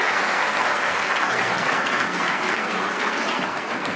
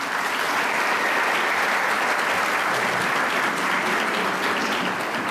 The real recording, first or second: second